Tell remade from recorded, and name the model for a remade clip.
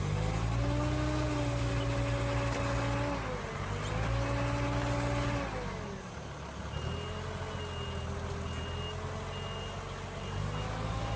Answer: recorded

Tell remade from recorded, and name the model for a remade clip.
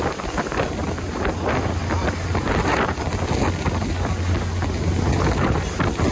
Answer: recorded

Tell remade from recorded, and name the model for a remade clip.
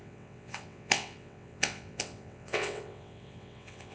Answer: remade, vocoder, WaveNeXt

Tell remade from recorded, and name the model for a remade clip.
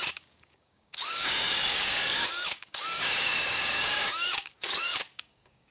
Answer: remade, codec, DAC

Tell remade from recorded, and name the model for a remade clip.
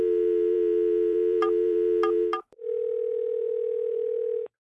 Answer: remade, vocoder, BigVGAN v2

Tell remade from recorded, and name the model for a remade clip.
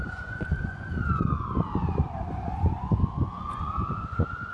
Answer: remade, vocoder, Vocos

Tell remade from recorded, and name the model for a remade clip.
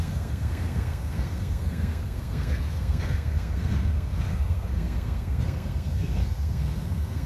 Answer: remade, codec, SNAC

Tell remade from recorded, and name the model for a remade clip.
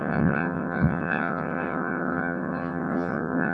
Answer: remade, vocoder, WaveNeXt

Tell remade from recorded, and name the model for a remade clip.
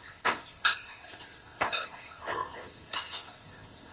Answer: remade, codec, ZipCodec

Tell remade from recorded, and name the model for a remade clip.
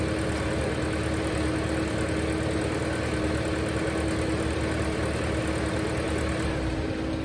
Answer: recorded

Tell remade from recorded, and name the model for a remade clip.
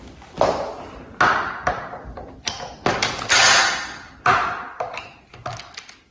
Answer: recorded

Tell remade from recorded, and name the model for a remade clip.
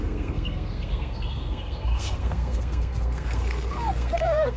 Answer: remade, codec, SNAC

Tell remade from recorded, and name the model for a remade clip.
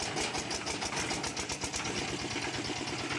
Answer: recorded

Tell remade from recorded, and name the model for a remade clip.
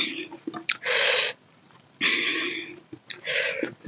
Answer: recorded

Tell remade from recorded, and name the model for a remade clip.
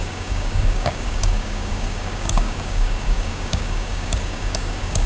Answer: remade, codec, DAC